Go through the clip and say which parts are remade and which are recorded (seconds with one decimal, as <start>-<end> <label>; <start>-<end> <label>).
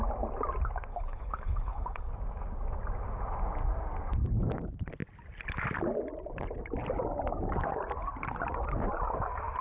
0.0-0.9 recorded; 0.9-2.1 remade; 2.1-9.6 recorded